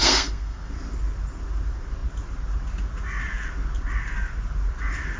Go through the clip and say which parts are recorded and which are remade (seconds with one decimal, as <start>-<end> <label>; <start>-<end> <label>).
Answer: 0.0-0.7 remade; 0.7-5.2 recorded